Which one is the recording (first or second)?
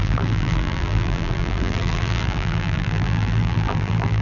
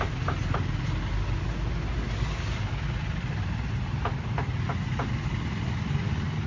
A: second